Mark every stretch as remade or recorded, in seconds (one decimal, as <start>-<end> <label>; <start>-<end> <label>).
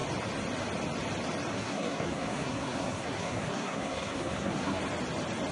0.0-1.5 recorded; 1.5-4.8 remade; 4.8-5.5 recorded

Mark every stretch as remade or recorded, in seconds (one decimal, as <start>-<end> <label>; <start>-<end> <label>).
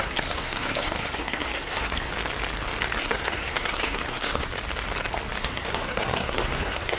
0.0-2.1 remade; 2.1-3.0 recorded; 3.0-4.5 remade; 4.5-5.4 recorded; 5.4-7.0 remade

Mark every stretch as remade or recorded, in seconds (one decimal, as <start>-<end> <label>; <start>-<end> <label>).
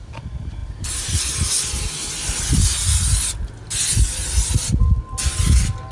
0.0-5.9 recorded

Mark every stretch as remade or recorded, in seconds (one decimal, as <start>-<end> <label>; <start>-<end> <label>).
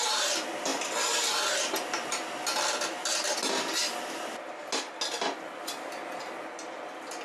0.0-7.2 recorded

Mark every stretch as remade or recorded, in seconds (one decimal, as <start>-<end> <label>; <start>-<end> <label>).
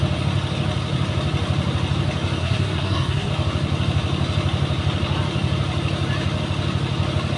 0.0-2.4 recorded; 2.4-3.3 remade; 3.3-7.4 recorded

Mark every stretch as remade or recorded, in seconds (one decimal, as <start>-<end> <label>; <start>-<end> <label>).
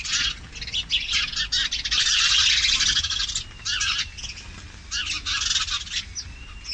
0.0-6.7 recorded